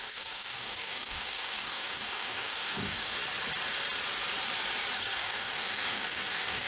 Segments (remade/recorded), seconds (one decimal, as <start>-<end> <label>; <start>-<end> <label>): 0.0-3.1 remade; 3.1-5.0 recorded; 5.0-6.7 remade